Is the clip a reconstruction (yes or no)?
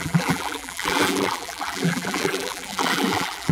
yes